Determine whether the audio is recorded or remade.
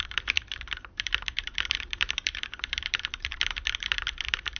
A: remade